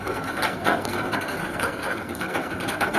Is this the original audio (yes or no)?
no